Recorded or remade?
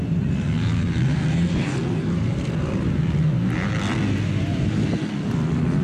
recorded